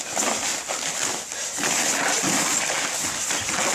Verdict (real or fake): real